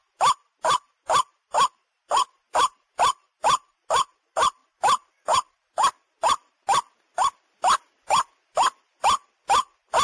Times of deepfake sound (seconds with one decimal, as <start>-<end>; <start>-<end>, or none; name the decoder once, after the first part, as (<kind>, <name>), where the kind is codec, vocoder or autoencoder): none